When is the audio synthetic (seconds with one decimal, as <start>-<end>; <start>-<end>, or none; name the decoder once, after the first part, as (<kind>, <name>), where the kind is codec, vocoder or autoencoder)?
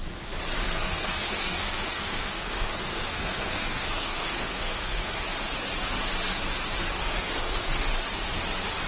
0.6-5.1 (codec, SNAC); 7.0-7.9